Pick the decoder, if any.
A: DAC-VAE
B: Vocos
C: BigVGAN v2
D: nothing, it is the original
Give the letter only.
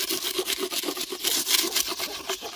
D